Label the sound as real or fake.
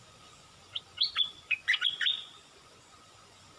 fake